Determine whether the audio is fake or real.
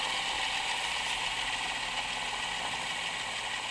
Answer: real